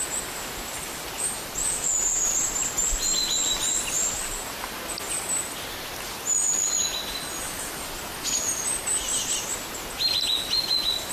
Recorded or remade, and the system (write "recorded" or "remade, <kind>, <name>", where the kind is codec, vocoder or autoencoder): recorded